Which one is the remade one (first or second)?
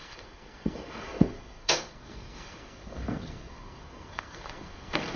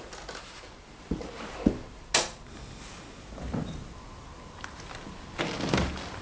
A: first